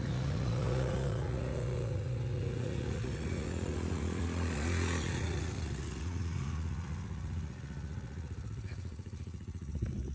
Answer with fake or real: fake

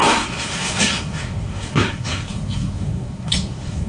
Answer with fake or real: fake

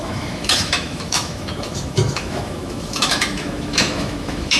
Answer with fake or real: fake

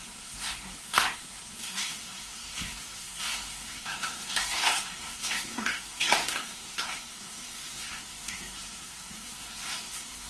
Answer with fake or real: fake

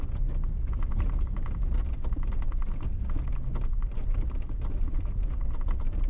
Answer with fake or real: real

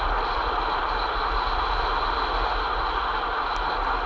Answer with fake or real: real